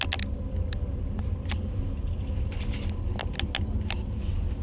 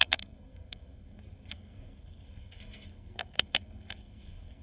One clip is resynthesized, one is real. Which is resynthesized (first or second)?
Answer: second